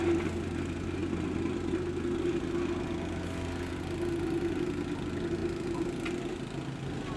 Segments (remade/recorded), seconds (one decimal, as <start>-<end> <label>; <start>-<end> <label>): 0.0-7.2 recorded